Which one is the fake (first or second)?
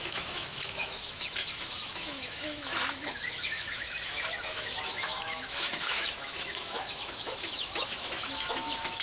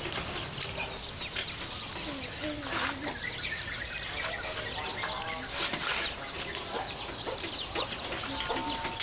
first